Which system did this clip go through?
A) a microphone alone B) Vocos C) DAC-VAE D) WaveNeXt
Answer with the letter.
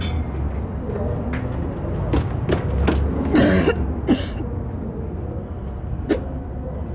A